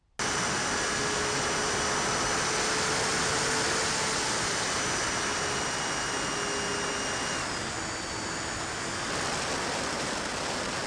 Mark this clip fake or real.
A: real